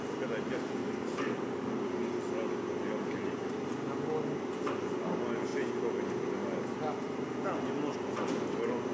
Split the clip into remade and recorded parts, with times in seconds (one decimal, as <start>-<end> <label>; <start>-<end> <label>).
0.0-0.8 recorded; 0.8-1.7 remade; 1.7-8.9 recorded